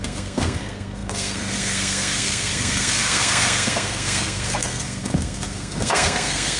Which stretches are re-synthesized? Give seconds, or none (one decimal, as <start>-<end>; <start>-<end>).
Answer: 0.0-6.6